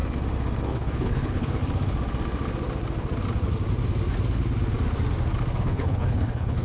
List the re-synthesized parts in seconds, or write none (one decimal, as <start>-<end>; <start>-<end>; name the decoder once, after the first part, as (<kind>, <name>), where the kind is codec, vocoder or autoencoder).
0.6-1.6 (codec, HILCodec); 5.6-6.6